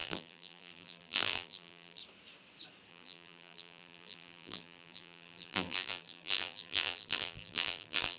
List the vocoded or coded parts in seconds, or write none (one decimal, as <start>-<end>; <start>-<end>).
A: 0.0-2.0; 2.9-8.2